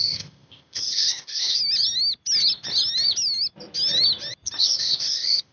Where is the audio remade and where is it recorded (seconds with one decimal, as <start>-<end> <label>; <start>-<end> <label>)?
0.0-1.6 remade; 1.6-4.6 recorded; 4.6-5.5 remade